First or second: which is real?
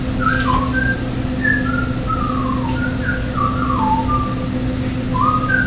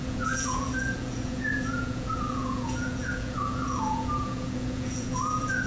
first